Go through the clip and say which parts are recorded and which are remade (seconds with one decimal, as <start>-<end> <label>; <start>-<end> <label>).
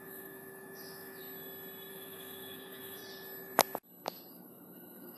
0.0-1.2 remade; 1.2-1.9 recorded; 1.9-3.0 remade; 3.0-4.3 recorded; 4.3-5.2 remade